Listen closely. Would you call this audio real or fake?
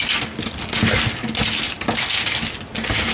real